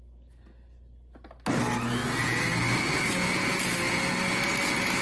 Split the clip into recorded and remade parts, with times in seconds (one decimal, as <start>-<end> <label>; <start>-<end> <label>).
0.0-5.0 recorded